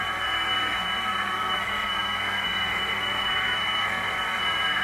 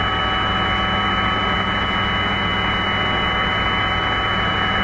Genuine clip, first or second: second